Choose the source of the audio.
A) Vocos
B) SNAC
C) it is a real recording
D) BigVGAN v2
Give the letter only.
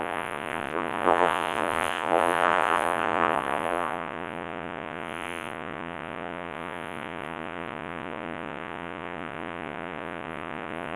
A